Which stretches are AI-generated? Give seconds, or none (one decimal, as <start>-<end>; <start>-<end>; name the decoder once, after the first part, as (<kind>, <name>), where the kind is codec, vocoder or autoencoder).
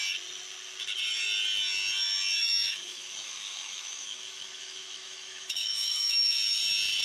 2.4-6.6 (autoencoder, DAC-VAE)